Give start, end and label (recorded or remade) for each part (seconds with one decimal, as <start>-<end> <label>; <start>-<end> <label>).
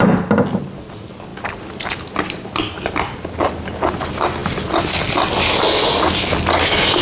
0.0-7.0 recorded